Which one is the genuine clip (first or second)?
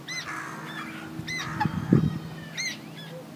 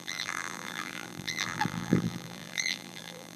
first